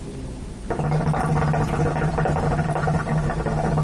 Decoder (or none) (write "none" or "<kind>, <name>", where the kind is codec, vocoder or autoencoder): none